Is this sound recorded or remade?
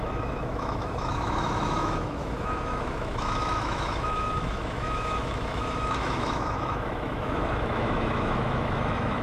remade